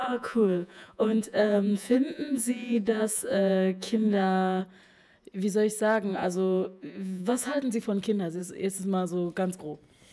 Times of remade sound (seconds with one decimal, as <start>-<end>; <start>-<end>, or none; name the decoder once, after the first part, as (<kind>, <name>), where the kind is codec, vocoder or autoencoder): 0.0-4.6 (vocoder, Vocos); 6.1-7.6

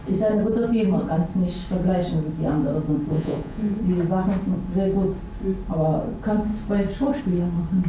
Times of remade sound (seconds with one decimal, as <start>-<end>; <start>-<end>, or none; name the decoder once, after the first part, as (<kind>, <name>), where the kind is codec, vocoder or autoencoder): 3.1-3.8 (vocoder, Vocos)

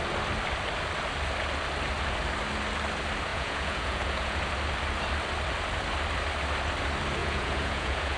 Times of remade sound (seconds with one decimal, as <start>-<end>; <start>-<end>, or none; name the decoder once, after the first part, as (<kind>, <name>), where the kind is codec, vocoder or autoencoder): 3.3-4.4 (vocoder, Vocos); 7.2-8.2

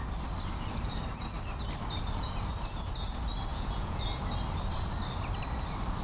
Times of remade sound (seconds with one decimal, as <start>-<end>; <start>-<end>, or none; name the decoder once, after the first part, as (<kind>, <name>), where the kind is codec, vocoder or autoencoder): 3.5-4.0 (vocoder, Vocos)

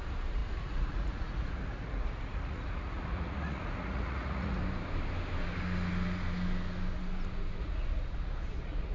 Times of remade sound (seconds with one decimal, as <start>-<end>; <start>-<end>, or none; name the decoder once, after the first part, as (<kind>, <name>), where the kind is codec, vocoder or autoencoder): 0.0-4.6 (vocoder, Vocos); 7.6-8.9